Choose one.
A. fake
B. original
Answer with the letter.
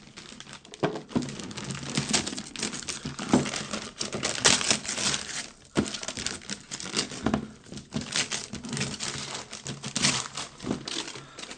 B